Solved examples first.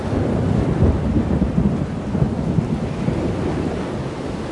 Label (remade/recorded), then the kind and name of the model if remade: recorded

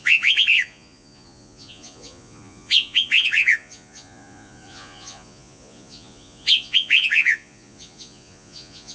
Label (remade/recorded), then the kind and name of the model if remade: remade, vocoder, Vocos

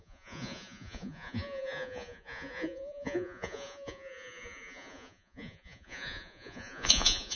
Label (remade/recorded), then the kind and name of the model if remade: remade, vocoder, Vocos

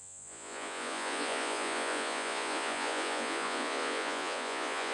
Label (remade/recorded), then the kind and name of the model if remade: remade, vocoder, Vocos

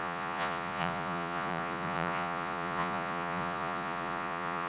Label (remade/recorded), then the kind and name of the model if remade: remade, vocoder, Vocos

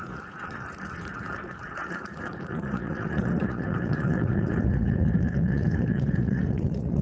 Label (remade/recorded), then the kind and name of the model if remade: remade, vocoder, Vocos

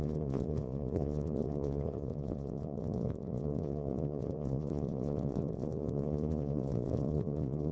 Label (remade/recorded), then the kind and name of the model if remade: remade, vocoder, Vocos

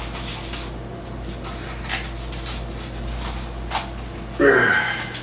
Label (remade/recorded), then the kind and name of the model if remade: recorded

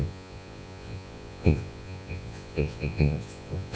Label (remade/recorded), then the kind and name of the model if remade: remade, vocoder, Vocos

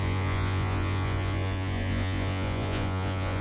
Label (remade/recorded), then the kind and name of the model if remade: remade, vocoder, Vocos